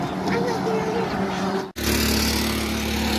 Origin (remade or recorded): recorded